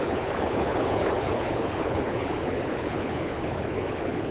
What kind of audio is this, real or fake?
fake